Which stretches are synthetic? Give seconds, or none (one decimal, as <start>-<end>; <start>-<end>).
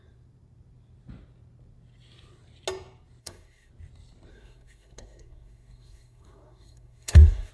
3.2-3.7; 4.3-7.5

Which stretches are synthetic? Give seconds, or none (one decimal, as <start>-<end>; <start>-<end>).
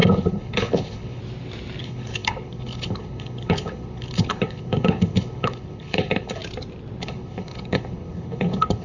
0.0-1.2; 1.8-6.4; 7.0-8.8